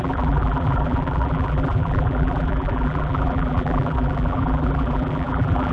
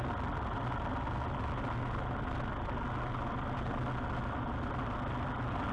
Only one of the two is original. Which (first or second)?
second